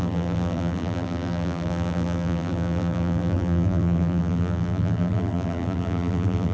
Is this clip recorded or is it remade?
remade